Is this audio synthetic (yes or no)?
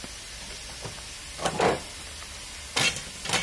no